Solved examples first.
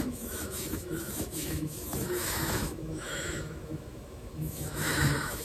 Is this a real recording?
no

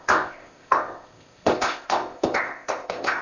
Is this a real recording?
no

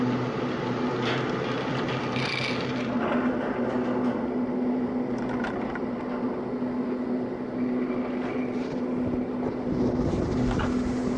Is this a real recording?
yes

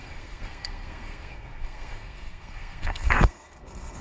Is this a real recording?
no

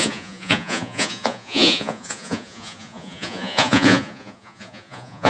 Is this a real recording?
no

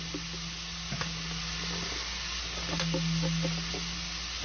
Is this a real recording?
yes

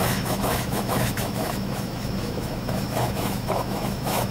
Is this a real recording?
no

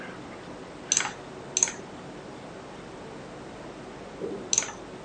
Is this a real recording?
yes